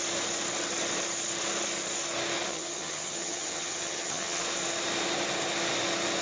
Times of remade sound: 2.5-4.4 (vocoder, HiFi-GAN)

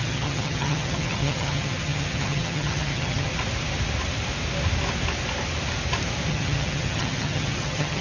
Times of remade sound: 0.0-3.3 (vocoder, HiFi-GAN); 6.3-8.0

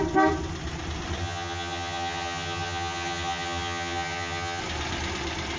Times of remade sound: 1.2-4.6 (vocoder, HiFi-GAN)

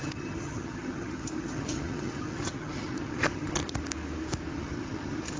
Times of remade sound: 0.0-3.6 (vocoder, HiFi-GAN); 4.5-5.4

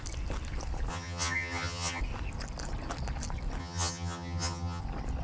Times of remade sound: 0.9-2.0 (vocoder, HiFi-GAN); 3.6-4.8

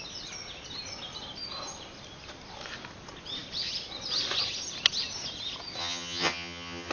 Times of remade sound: 5.8-6.9 (vocoder, HiFi-GAN)

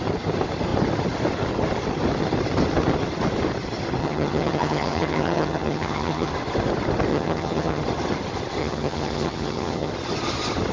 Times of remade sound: 4.0-6.3 (vocoder, HiFi-GAN); 7.1-7.8; 8.6-9.9

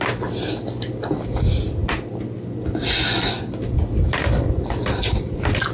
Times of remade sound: none